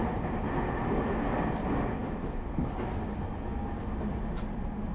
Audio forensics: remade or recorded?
recorded